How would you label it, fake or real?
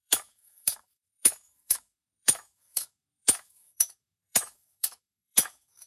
fake